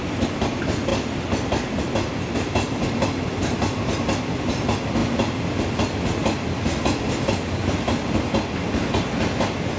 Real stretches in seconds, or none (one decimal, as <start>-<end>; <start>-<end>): 0.0-9.8